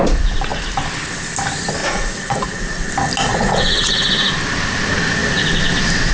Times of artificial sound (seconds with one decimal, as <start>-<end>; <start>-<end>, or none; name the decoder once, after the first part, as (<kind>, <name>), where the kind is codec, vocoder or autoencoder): 1.8-2.9 (vocoder, Vocos); 3.3-4.3